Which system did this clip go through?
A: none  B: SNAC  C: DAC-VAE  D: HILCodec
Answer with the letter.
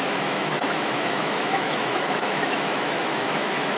C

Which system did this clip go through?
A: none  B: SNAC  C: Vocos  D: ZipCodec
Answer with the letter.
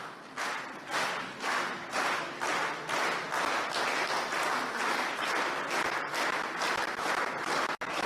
A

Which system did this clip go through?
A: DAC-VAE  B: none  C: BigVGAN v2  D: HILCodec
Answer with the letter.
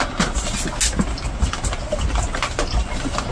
B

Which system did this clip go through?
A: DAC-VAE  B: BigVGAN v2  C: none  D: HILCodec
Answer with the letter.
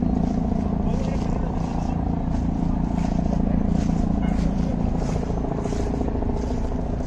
C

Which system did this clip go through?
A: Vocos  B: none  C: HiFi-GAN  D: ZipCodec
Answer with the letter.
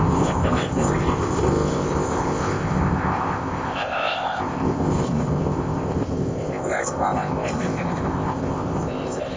D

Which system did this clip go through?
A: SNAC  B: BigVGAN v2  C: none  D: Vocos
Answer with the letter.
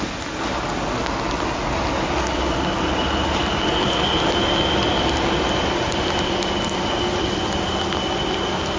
C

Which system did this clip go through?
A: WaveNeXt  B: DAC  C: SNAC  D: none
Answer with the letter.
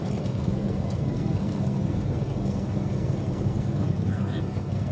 C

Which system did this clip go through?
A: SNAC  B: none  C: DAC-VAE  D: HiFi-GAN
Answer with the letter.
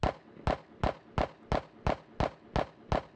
B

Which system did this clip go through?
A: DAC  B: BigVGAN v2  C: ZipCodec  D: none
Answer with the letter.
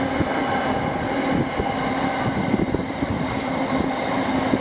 D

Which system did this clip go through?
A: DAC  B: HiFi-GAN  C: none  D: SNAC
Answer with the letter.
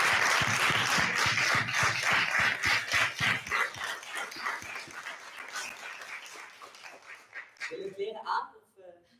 C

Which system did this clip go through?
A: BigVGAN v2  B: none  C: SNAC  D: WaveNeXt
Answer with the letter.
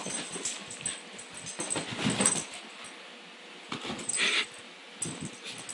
B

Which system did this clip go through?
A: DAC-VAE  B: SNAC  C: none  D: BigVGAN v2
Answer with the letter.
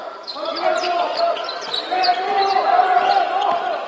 C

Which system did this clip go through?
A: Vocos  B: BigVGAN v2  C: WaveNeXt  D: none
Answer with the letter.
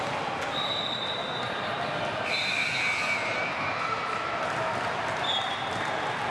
B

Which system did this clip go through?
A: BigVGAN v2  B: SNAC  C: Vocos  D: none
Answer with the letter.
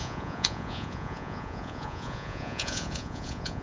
C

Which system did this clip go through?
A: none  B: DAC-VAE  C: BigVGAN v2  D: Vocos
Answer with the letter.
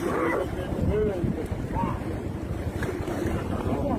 C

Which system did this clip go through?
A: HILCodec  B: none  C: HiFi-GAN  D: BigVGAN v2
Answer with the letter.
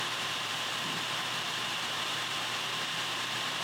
D